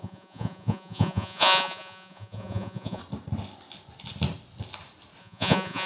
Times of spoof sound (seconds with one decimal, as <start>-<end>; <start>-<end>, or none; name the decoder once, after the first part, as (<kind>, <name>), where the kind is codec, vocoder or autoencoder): 0.0-3.0 (vocoder, Vocos); 5.2-5.9